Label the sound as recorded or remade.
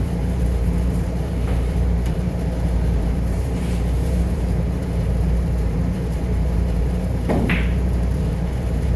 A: remade